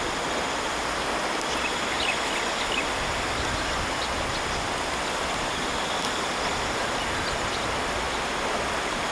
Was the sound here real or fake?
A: real